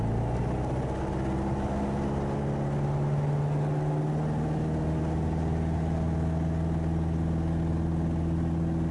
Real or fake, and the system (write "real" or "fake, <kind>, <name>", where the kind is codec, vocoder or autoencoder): real